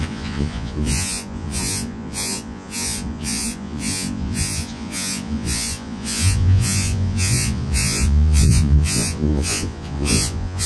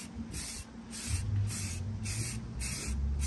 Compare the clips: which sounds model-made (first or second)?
first